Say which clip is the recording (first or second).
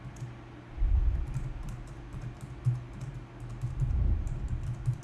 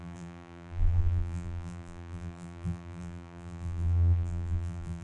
first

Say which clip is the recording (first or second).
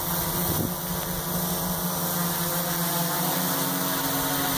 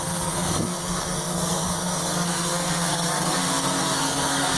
first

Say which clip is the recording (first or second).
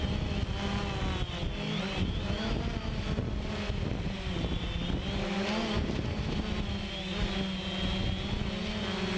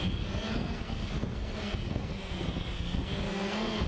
first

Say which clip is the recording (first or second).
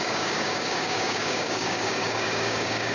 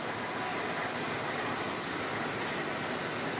second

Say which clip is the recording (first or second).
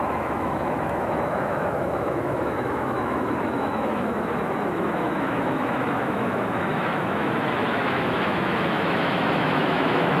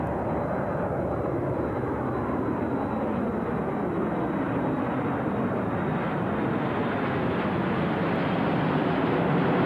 second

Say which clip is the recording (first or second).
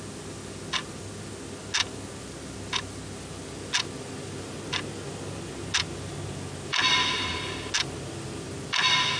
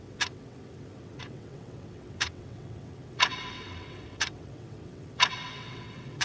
first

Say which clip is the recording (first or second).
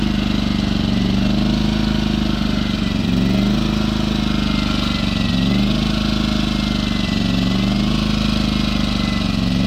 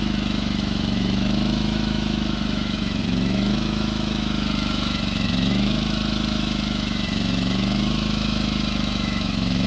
first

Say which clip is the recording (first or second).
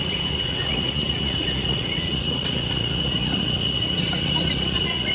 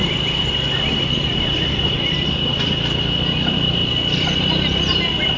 second